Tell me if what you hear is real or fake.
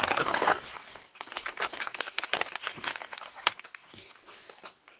fake